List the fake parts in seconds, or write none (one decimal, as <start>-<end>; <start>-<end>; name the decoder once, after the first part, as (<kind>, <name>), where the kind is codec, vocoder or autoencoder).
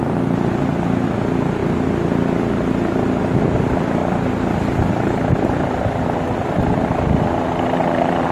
0.0-1.6 (vocoder, BigVGAN v2); 3.2-8.3